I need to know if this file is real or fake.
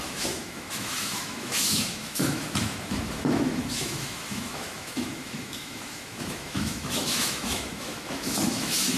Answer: fake